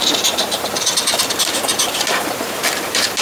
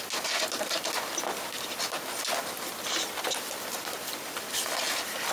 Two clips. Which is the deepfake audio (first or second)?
first